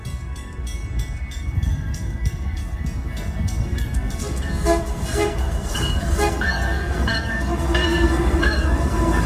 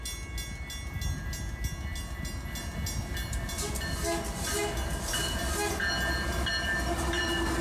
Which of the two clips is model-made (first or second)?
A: first